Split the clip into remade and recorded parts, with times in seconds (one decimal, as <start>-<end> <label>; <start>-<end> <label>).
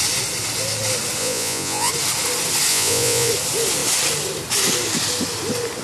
0.0-1.2 recorded; 1.2-1.9 remade; 1.9-2.7 recorded; 2.7-3.3 remade; 3.3-5.8 recorded